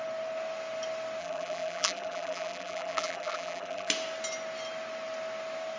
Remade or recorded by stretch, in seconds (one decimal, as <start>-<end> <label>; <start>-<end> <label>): 0.0-1.2 recorded; 1.2-3.9 remade; 3.9-5.8 recorded